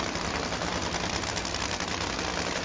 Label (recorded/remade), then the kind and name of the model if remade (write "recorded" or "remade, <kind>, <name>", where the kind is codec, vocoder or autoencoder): remade, vocoder, BigVGAN v2